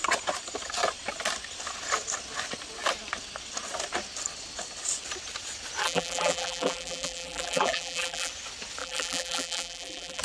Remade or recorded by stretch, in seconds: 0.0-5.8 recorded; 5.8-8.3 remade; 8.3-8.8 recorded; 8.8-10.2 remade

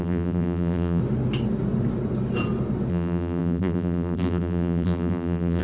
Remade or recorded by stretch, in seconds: 0.0-1.0 remade; 1.0-2.9 recorded; 2.9-5.6 remade

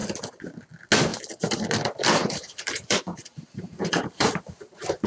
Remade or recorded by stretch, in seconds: 0.0-1.1 recorded; 1.1-1.6 remade; 1.6-2.2 recorded; 2.2-4.3 remade; 4.3-5.1 recorded

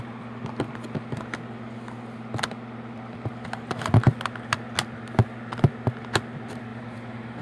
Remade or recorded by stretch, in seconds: 0.0-6.7 recorded; 6.7-7.4 remade

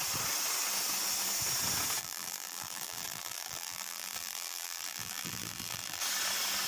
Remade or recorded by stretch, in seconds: 0.0-2.0 recorded; 2.0-6.0 remade; 6.0-6.7 recorded

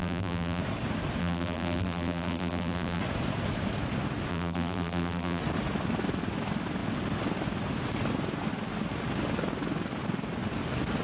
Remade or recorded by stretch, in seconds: 0.0-0.6 remade; 0.6-1.2 recorded; 1.2-3.0 remade; 3.0-4.3 recorded; 4.3-5.4 remade; 5.4-11.0 recorded